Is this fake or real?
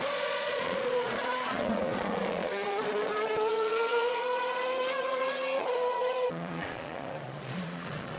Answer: fake